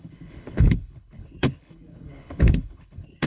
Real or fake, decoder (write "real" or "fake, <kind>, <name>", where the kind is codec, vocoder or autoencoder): fake, codec, HILCodec